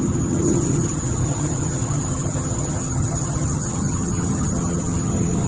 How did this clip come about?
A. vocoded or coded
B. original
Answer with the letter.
A